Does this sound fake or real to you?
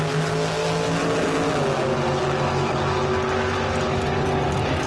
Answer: real